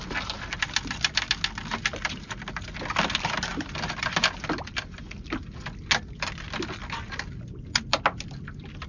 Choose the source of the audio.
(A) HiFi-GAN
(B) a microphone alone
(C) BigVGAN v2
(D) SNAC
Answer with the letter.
B